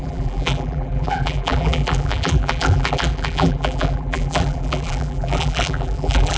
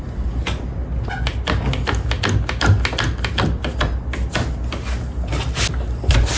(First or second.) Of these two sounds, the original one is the second